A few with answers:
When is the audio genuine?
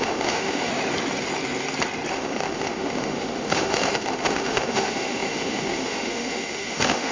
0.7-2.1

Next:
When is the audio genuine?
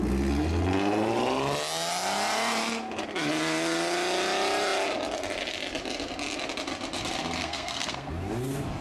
0.0-7.4; 8.1-8.8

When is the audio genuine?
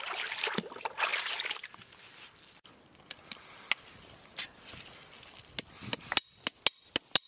0.0-7.3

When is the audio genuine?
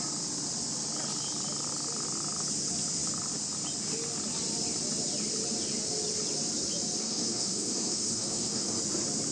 0.0-7.0; 8.8-9.3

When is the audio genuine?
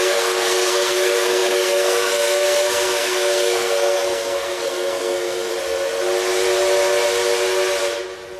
5.5-8.4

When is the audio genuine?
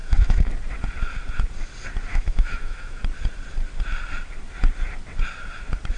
0.5-2.1; 3.0-6.0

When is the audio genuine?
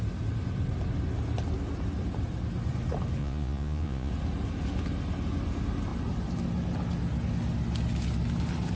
0.0-3.2; 4.1-8.8